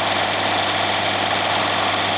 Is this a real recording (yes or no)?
yes